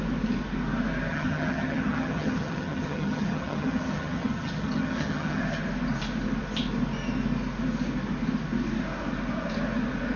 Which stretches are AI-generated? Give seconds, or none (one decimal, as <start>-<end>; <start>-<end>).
1.1-5.4